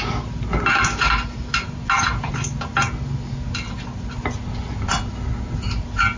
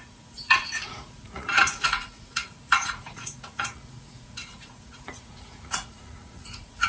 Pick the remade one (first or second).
second